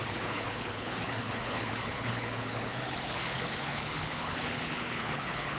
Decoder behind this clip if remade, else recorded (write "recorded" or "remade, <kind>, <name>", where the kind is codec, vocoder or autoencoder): remade, codec, HILCodec